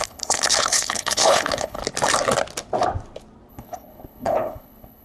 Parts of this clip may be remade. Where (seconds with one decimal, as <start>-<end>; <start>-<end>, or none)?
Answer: 0.0-1.8; 3.5-5.0

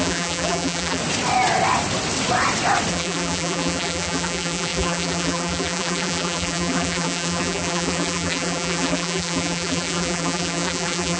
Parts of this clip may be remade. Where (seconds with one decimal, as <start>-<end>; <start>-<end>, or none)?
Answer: 0.0-1.0; 2.9-11.2